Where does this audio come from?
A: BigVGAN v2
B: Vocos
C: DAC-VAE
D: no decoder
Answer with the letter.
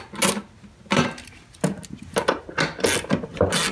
D